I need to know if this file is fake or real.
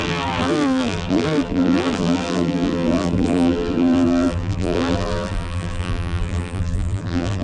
fake